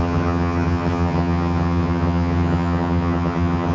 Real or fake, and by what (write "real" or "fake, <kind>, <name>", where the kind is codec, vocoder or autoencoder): fake, vocoder, HiFi-GAN